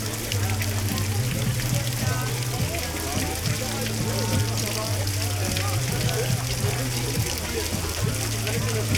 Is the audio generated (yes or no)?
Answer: no